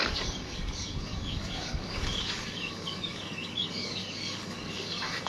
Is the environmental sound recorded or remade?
remade